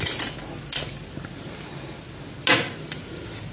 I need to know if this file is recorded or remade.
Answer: recorded